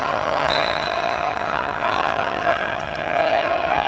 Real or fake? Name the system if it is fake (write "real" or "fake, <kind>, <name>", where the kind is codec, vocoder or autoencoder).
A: fake, vocoder, HiFi-GAN